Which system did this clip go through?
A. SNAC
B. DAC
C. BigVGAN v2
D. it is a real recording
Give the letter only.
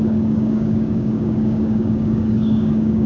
B